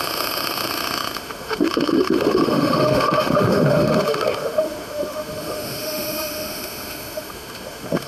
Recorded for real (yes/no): no